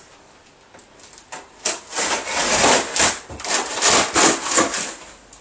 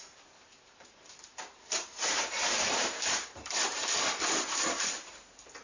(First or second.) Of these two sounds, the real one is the first